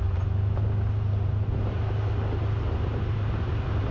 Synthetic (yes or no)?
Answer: no